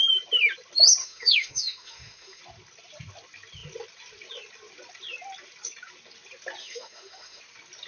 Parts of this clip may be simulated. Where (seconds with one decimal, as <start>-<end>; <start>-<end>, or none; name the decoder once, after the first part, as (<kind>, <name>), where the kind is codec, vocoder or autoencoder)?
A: 1.0-2.4 (autoencoder, DAC-VAE); 6.6-7.4